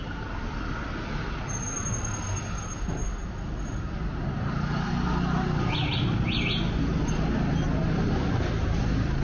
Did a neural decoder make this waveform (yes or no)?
no